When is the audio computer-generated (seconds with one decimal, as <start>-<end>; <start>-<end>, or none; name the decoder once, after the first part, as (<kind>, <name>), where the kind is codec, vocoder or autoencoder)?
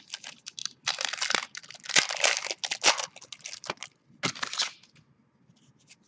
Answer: none